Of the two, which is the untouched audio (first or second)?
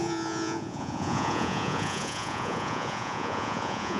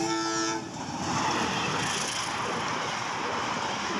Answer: second